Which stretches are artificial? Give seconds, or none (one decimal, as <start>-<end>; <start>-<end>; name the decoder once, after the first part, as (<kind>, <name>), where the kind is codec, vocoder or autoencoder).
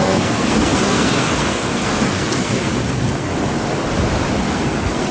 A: 0.0-3.3 (codec, SNAC); 4.5-5.1